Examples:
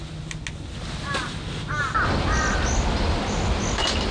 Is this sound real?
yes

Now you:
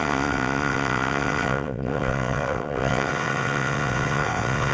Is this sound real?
no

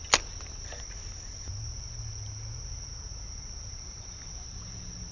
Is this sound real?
yes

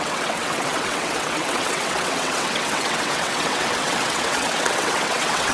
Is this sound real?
no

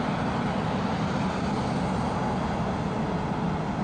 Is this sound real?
yes